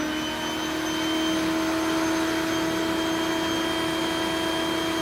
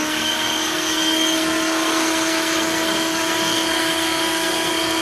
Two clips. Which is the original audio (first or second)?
first